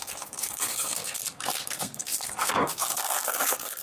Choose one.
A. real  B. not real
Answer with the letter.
B